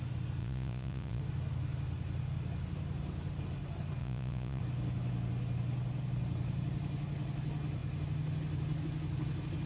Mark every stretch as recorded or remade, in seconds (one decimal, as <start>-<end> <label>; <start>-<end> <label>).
0.0-0.4 recorded; 0.4-1.2 remade; 1.2-4.0 recorded; 4.0-4.6 remade; 4.6-9.7 recorded